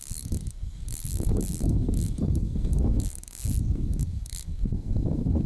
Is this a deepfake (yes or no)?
yes